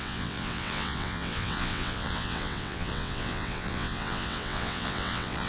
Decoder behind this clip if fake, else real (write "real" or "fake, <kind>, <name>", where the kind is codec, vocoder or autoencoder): fake, vocoder, WaveNeXt